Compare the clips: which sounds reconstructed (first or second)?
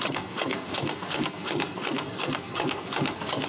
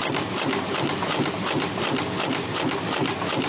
first